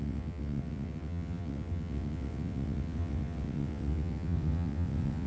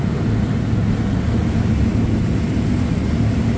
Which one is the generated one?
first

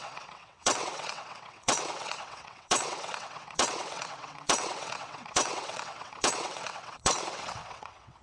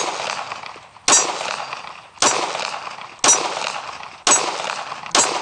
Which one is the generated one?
first